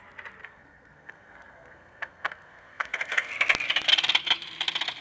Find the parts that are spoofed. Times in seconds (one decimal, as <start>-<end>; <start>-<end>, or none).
0.4-3.3